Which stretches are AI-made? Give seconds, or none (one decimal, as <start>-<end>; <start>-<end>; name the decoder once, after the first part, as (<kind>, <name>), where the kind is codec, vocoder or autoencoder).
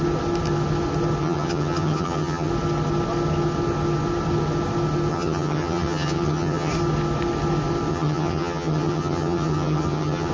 1.2-2.5 (vocoder, HiFi-GAN); 5.1-6.7; 7.9-10.3